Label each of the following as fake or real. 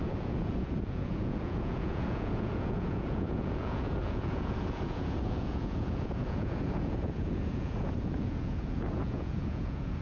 fake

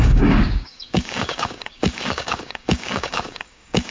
fake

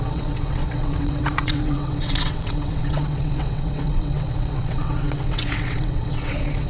fake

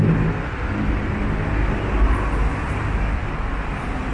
real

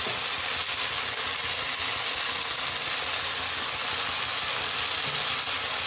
real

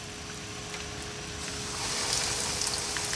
real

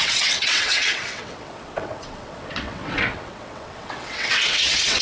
fake